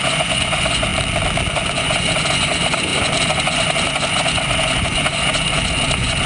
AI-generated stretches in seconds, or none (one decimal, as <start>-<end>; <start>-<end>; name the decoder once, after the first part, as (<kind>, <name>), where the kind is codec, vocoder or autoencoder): 0.0-0.9 (vocoder, Vocos); 1.5-6.3